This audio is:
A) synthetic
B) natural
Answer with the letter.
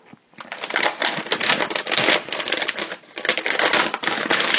B